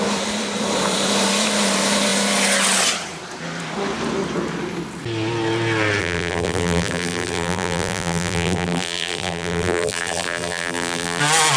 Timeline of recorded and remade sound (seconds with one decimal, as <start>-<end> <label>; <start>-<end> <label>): 0.0-6.0 recorded; 6.0-11.2 remade; 11.2-11.6 recorded